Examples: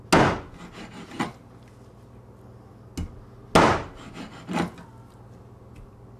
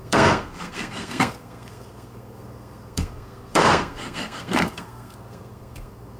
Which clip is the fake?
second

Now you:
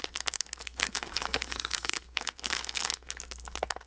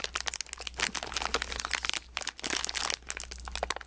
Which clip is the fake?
first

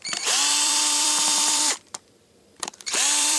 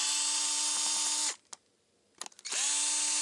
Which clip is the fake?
first